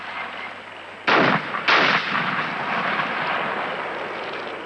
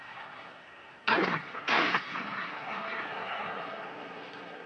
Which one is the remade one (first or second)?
second